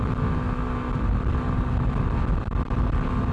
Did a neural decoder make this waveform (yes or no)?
no